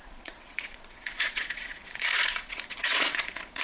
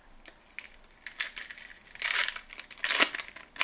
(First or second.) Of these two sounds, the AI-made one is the first